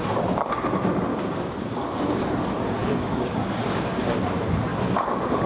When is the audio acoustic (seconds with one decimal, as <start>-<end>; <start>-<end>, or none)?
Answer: 0.0-1.1; 2.2-2.8; 4.2-4.7